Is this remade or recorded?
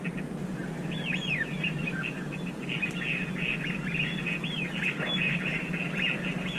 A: recorded